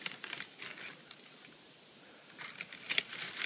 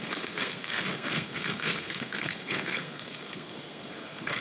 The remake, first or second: second